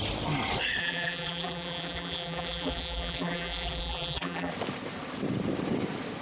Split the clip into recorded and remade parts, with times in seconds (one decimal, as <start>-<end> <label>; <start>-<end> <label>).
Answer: 0.0-0.8 recorded; 0.8-4.5 remade; 4.5-6.2 recorded